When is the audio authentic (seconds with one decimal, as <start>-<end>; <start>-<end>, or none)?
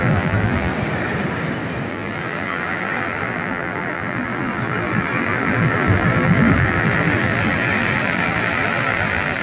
0.7-1.9